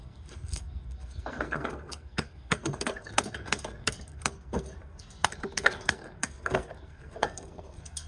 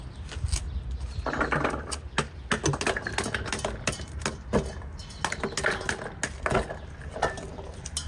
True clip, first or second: second